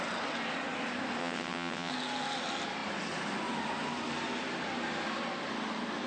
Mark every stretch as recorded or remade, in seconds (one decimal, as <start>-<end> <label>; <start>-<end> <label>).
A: 0.0-1.2 recorded; 1.2-1.9 remade; 1.9-6.1 recorded